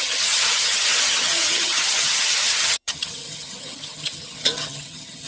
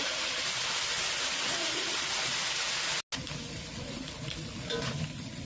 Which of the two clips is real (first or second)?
second